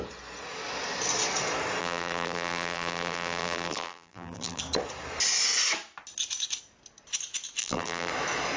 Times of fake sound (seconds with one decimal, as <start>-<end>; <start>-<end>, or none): 1.8-4.6; 7.6-8.1